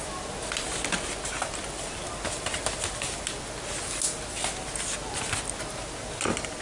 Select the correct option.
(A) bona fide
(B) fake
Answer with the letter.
A